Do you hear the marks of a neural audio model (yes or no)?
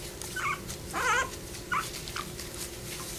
no